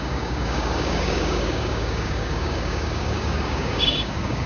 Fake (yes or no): yes